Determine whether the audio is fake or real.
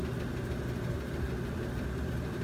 real